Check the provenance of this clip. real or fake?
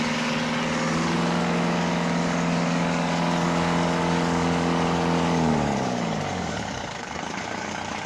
fake